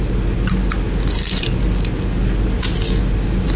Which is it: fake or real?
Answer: real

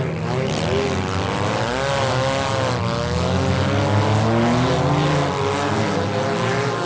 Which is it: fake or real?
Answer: real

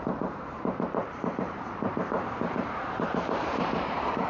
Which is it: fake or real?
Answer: fake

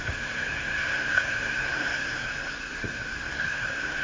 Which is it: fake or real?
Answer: fake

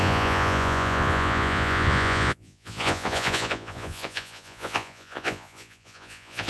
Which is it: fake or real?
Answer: fake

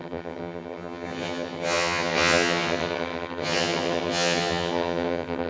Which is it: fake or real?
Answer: fake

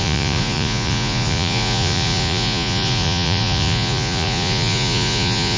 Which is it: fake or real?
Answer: fake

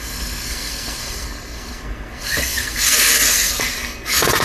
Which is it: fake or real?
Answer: fake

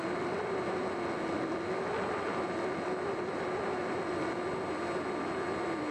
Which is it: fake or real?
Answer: real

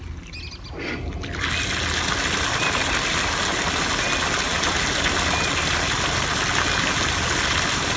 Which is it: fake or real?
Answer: real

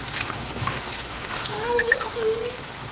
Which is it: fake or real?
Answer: fake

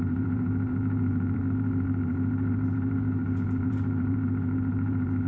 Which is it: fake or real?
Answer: fake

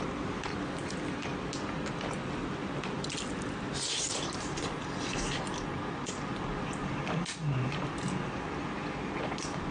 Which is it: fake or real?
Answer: real